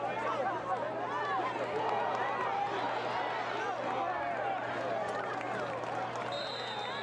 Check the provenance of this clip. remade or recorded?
recorded